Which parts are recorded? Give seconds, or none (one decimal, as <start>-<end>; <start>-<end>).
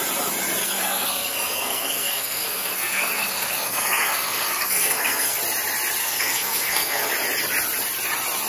0.0-0.6; 5.4-6.0; 7.1-8.5